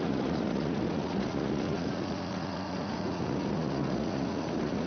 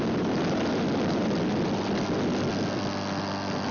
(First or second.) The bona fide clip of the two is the second